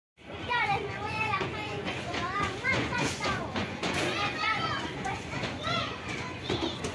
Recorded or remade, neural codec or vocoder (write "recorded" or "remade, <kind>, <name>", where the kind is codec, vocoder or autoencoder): remade, vocoder, Vocos